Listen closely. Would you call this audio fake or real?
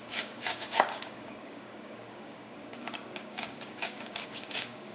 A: fake